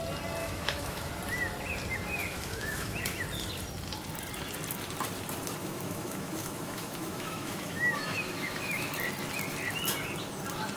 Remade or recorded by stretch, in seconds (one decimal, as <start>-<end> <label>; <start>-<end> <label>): 0.0-0.4 recorded; 0.4-1.1 remade; 1.1-2.2 recorded; 2.2-3.0 remade; 3.0-5.6 recorded; 5.6-9.0 remade; 9.0-10.8 recorded